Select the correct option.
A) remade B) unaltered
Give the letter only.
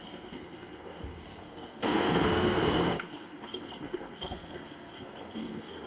A